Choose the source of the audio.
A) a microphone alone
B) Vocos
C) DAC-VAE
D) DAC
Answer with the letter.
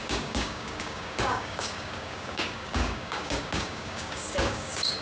D